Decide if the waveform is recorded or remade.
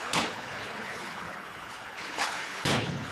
remade